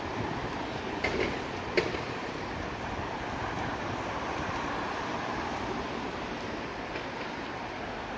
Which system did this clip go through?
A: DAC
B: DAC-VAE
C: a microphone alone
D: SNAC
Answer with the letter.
C